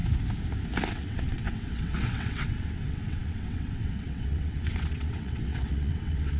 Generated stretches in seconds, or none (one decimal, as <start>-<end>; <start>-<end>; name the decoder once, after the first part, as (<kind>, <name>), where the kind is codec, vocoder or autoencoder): 0.9-6.4 (vocoder, WaveNeXt)